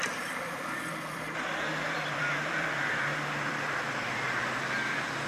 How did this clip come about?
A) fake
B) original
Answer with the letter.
A